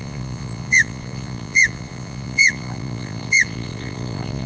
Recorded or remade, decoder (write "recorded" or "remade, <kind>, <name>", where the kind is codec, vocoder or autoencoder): remade, vocoder, Vocos